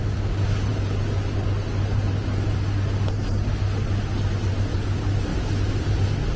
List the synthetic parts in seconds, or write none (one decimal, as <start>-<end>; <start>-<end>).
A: none